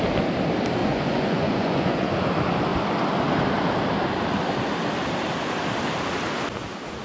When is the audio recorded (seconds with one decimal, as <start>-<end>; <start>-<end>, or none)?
0.0-0.8; 2.1-7.0